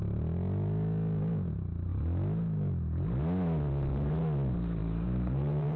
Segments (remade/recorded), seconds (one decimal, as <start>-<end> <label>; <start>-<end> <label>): 0.0-4.8 recorded; 4.8-5.8 remade